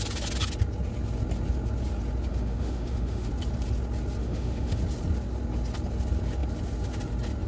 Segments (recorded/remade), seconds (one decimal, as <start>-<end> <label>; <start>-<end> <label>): 0.0-2.3 recorded; 2.3-3.3 remade; 3.3-4.2 recorded; 4.2-4.8 remade; 4.8-7.5 recorded